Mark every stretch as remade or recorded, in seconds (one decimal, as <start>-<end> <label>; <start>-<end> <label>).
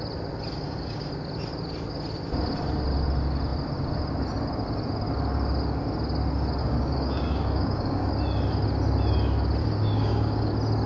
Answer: 0.0-0.5 recorded; 0.5-1.1 remade; 1.1-6.6 recorded; 6.6-8.1 remade; 8.1-9.6 recorded; 9.6-10.5 remade; 10.5-10.9 recorded